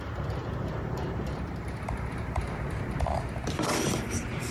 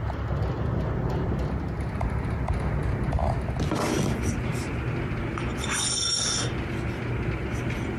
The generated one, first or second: first